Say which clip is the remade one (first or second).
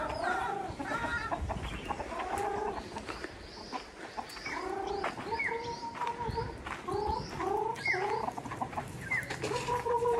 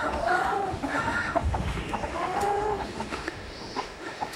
second